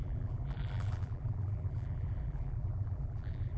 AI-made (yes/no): yes